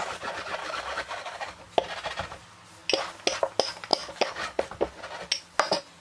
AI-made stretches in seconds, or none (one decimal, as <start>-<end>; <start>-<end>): 0.6-1.6; 3.9-4.6